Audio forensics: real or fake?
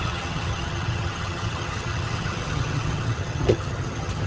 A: fake